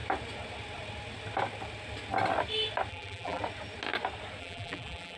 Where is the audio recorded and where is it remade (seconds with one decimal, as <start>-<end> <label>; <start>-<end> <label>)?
0.0-2.9 recorded; 2.9-3.4 remade; 3.4-4.4 recorded; 4.4-5.2 remade